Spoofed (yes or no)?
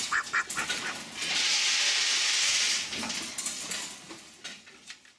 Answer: no